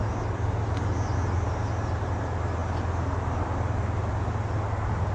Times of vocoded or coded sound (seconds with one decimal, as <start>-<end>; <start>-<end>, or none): none